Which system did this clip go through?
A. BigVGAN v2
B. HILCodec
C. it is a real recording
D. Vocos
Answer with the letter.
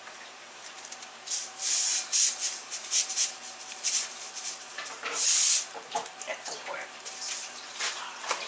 A